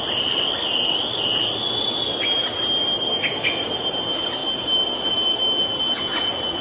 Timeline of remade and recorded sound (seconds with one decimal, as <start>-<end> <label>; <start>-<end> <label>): 0.0-6.6 recorded